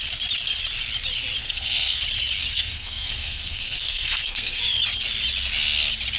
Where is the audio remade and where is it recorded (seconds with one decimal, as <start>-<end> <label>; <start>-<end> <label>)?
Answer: 0.0-1.4 recorded; 1.4-2.0 remade; 2.0-2.4 recorded; 2.4-4.6 remade; 4.6-6.2 recorded